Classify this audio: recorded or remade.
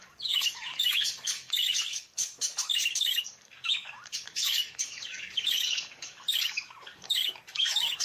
remade